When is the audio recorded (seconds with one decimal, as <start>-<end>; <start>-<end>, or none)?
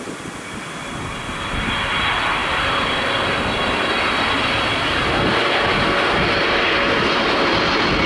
0.0-2.4; 3.9-8.1